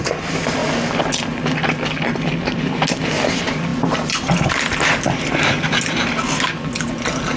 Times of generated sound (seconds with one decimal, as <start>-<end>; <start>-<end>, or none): none